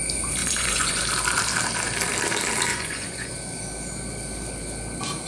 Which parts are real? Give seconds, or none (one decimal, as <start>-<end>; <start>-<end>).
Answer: 0.0-0.4; 1.0-2.7; 3.3-5.3